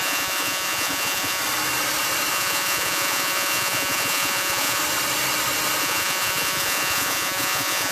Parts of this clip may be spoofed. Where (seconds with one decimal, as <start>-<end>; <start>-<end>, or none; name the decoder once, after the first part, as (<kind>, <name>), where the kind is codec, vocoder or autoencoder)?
0.0-1.4 (vocoder, Vocos); 2.3-4.8; 5.8-7.9